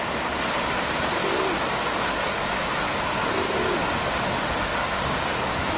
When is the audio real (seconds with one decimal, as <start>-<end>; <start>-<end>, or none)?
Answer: 0.0-4.8